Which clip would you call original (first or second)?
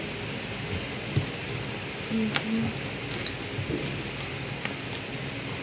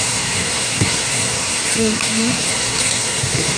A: first